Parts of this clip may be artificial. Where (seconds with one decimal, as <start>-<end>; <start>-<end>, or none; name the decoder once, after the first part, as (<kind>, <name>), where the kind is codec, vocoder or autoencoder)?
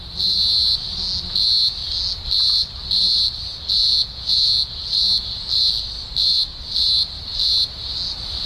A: 3.8-4.7 (vocoder, Vocos)